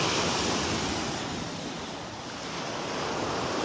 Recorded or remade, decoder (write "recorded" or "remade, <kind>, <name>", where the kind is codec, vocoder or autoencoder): recorded